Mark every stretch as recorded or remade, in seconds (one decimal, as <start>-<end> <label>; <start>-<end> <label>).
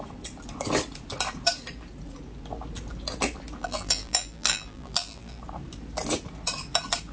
0.0-3.6 recorded; 3.6-5.4 remade; 5.4-7.1 recorded